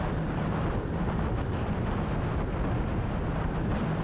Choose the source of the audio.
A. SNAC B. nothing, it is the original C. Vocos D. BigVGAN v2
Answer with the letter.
B